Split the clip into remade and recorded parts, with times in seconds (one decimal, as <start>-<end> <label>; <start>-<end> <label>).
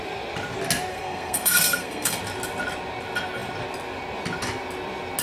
0.0-0.9 recorded; 0.9-2.2 remade; 2.2-5.2 recorded